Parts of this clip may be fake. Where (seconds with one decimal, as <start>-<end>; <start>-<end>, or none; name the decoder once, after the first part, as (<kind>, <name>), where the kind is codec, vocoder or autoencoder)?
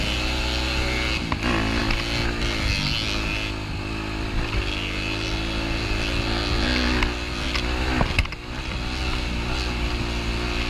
none